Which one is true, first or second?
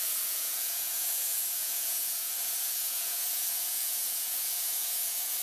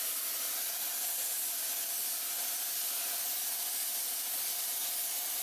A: second